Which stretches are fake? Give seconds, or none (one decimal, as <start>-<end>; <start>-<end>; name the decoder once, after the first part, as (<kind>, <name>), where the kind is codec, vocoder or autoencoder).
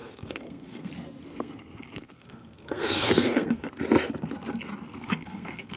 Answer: 0.0-0.9 (codec, SNAC); 1.3-3.7; 4.9-5.8